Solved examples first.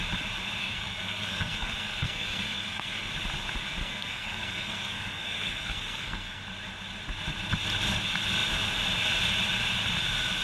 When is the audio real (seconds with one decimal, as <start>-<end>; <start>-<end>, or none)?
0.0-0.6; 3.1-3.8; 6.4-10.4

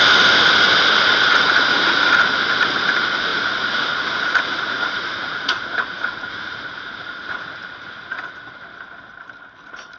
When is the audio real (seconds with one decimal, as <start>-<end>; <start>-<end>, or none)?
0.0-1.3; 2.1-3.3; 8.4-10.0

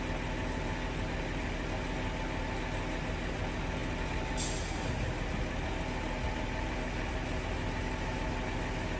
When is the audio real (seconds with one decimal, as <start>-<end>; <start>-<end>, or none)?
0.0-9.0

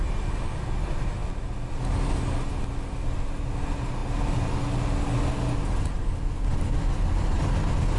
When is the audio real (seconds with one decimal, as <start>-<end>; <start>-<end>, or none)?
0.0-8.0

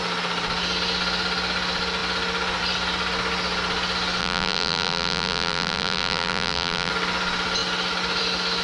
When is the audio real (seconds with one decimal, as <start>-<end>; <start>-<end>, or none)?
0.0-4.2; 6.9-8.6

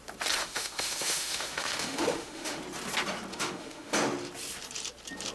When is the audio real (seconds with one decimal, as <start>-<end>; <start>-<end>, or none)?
0.0-0.4; 2.6-3.3; 3.9-5.3

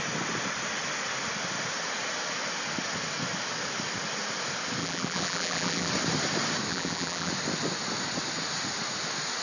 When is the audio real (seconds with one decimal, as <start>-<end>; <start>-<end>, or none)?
0.0-4.8; 5.9-6.7; 7.3-9.4

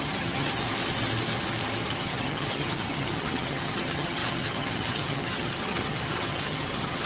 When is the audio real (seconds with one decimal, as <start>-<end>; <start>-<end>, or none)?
0.6-1.9